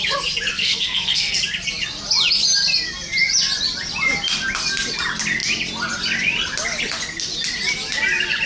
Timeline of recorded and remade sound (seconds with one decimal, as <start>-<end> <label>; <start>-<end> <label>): 0.0-0.5 recorded; 0.5-1.4 remade; 1.4-8.5 recorded